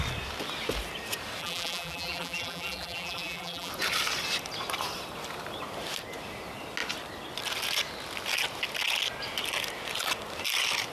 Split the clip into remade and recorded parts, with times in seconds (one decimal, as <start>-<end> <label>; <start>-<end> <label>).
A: 0.0-1.4 recorded; 1.4-3.7 remade; 3.7-10.9 recorded